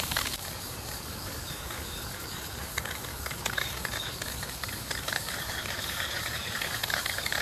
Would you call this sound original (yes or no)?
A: no